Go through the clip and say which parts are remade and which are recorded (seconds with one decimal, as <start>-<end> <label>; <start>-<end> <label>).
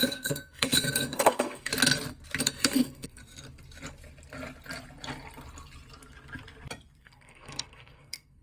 0.0-1.7 remade; 1.7-2.4 recorded; 2.4-3.2 remade; 3.2-7.0 recorded; 7.0-8.4 remade